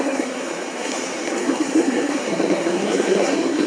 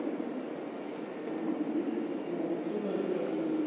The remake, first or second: first